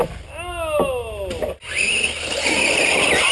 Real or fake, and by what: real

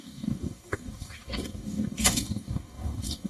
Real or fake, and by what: fake, codec, DAC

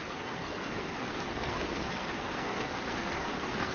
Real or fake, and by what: fake, codec, SNAC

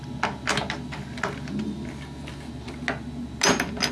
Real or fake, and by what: real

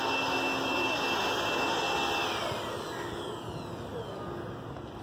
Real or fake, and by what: real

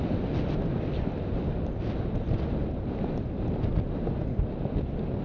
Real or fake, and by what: real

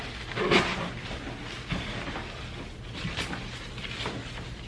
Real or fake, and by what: real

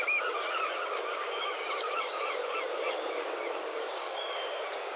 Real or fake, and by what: fake, codec, DAC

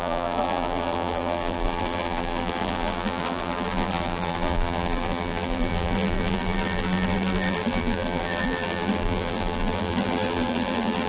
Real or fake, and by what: fake, vocoder, BigVGAN v2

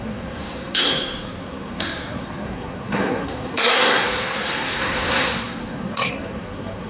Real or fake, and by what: fake, codec, SNAC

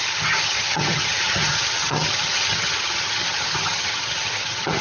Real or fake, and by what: fake, vocoder, HiFi-GAN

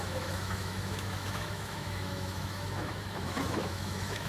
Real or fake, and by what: fake, autoencoder, DAC-VAE